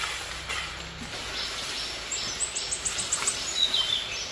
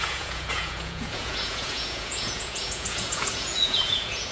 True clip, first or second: first